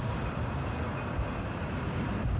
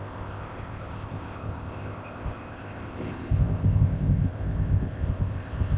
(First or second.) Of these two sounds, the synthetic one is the second